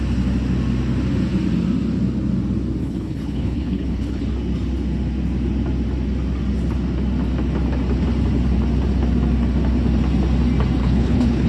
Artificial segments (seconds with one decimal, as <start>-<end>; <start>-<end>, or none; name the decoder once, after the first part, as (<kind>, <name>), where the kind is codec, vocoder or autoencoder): 2.8-4.2 (codec, HILCodec); 10.8-11.5